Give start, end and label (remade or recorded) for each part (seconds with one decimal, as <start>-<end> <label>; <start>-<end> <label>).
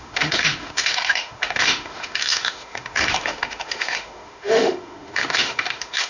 0.0-6.1 remade